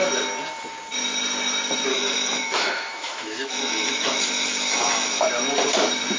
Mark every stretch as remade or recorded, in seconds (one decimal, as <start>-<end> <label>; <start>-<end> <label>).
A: 0.0-1.9 recorded; 1.9-5.2 remade; 5.2-6.2 recorded